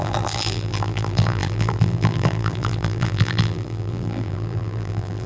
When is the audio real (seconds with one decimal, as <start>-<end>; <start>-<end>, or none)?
none